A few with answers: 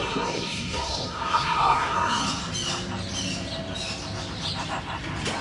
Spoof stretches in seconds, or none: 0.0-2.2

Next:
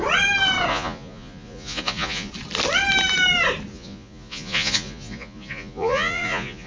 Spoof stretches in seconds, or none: 0.7-2.3; 3.7-6.7

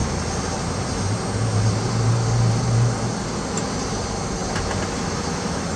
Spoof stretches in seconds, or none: none

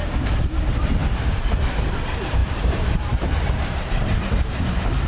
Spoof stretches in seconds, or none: 0.0-5.1

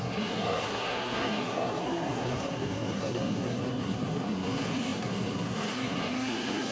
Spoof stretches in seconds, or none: 0.0-6.7

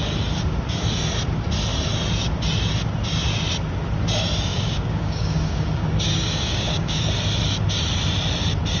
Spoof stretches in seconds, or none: 4.5-7.1